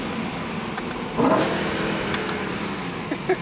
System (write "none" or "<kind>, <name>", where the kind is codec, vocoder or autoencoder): none